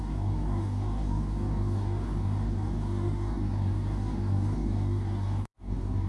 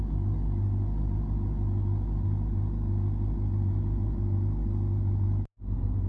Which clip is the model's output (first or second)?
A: first